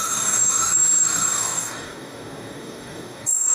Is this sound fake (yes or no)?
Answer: yes